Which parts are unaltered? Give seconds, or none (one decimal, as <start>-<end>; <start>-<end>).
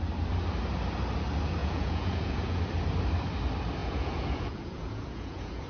0.0-1.6; 2.6-3.8